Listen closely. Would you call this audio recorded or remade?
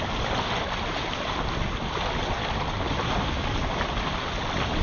recorded